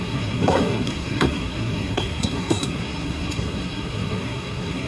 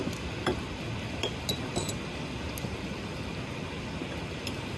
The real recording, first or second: second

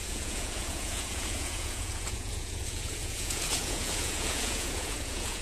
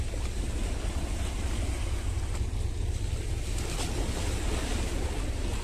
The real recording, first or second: second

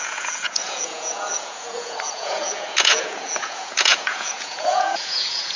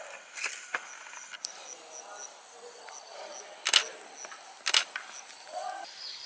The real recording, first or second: second